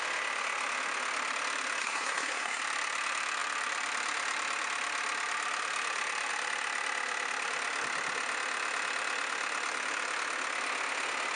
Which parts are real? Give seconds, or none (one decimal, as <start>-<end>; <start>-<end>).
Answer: 0.0-1.8; 2.6-11.4